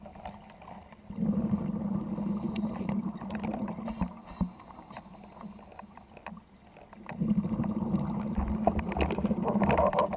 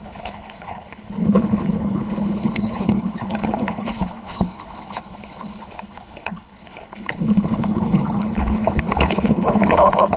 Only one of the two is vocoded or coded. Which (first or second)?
second